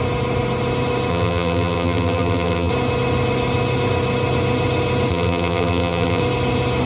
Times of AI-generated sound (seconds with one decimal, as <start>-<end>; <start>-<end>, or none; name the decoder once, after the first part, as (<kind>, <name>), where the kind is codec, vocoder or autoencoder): 1.1-2.7 (vocoder, BigVGAN v2); 5.1-6.2